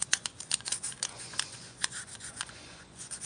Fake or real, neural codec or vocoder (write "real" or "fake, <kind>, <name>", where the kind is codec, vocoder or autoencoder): fake, vocoder, Vocos